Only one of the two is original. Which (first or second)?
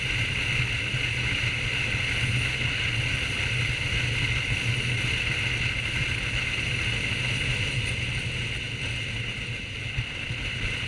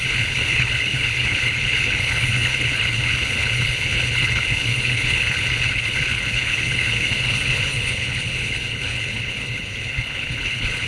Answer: first